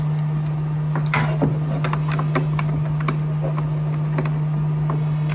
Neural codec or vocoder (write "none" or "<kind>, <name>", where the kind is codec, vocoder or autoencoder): none